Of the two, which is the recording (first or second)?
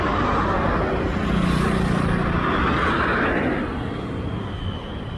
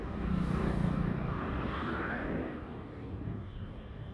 first